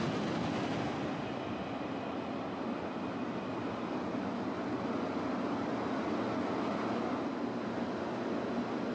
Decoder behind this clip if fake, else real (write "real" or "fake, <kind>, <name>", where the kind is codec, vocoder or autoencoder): real